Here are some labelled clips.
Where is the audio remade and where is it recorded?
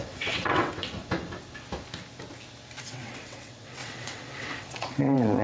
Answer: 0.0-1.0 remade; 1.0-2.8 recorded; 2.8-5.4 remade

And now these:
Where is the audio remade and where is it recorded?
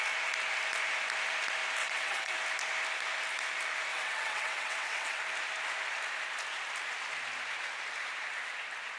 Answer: 0.0-1.8 recorded; 1.8-2.3 remade; 2.3-3.9 recorded; 3.9-5.2 remade; 5.2-9.0 recorded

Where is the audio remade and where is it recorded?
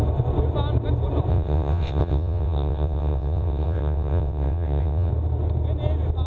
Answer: 0.0-1.3 recorded; 1.3-5.1 remade; 5.1-6.3 recorded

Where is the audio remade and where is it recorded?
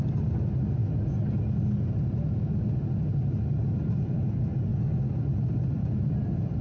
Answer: 0.0-6.6 recorded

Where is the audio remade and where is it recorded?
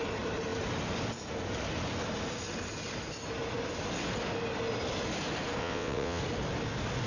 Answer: 0.0-5.6 recorded; 5.6-6.2 remade; 6.2-7.1 recorded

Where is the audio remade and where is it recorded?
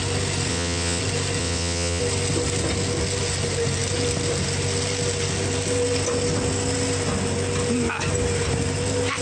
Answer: 0.0-0.5 recorded; 0.5-1.0 remade; 1.0-1.4 recorded; 1.4-2.0 remade; 2.0-9.2 recorded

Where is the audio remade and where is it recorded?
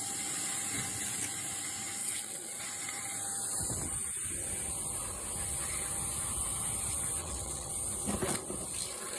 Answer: 0.0-2.0 recorded; 2.0-2.6 remade; 2.6-7.2 recorded; 7.2-7.7 remade; 7.7-9.2 recorded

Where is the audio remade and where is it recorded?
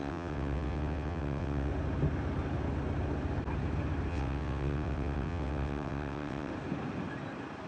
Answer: 0.0-1.7 remade; 1.7-4.1 recorded; 4.1-6.5 remade; 6.5-7.7 recorded